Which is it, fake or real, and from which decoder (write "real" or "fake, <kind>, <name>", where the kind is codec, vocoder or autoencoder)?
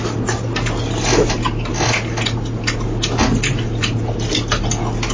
real